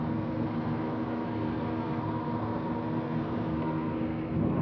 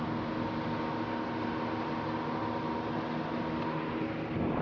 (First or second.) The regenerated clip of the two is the first